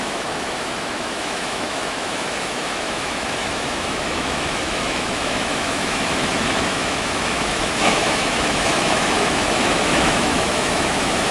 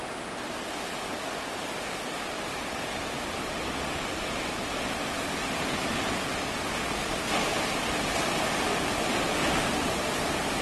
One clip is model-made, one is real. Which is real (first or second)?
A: second